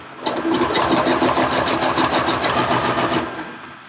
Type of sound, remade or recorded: recorded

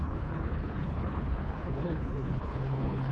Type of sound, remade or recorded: remade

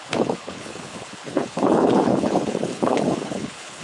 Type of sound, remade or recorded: remade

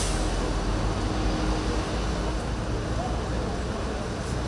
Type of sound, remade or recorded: recorded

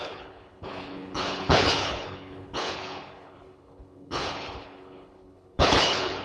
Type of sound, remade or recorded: remade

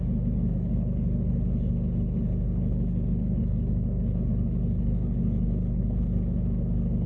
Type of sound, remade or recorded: remade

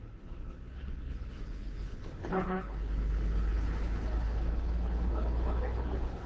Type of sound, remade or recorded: remade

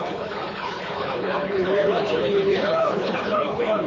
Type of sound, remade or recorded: remade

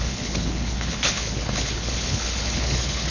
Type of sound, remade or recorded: remade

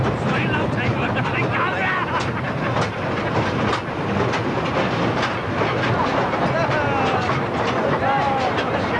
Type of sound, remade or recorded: recorded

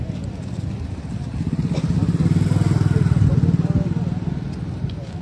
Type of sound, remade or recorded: recorded